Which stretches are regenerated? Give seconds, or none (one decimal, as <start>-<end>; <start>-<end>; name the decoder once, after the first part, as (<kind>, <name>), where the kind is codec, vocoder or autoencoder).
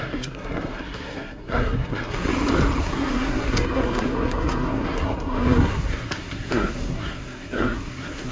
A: 0.0-2.3 (codec, SNAC); 2.8-8.3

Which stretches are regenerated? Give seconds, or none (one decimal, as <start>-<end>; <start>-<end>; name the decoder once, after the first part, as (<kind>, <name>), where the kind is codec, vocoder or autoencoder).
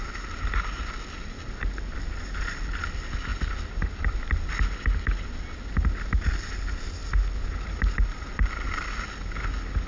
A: none